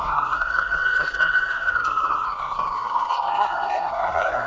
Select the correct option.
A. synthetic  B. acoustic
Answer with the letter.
A